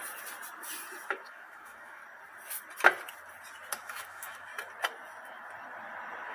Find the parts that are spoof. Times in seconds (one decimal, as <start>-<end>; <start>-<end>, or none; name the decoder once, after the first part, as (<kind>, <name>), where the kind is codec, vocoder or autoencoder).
1.1-2.0 (autoencoder, DAC-VAE); 3.7-4.5